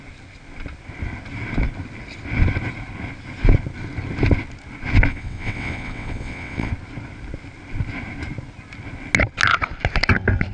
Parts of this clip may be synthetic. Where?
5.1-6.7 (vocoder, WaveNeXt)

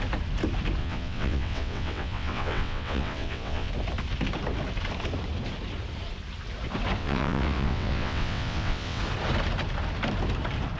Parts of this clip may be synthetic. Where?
0.8-3.7 (vocoder, WaveNeXt); 7.0-9.0

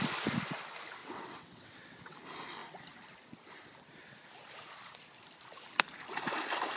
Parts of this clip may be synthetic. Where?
1.0-2.2 (vocoder, WaveNeXt)

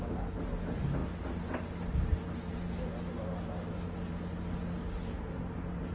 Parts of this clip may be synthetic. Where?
none

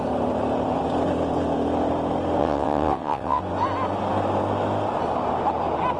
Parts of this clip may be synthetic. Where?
2.4-3.4 (vocoder, WaveNeXt)

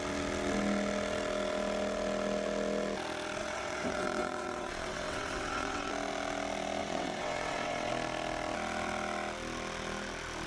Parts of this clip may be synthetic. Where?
3.4-5.9 (vocoder, WaveNeXt); 6.8-7.9